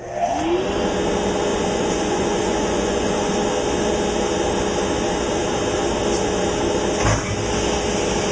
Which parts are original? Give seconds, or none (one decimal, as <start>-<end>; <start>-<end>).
0.0-1.5; 3.3-8.3